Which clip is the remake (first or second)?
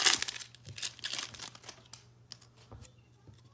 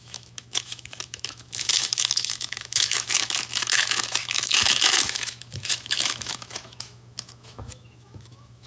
second